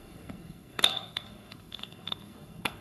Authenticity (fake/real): fake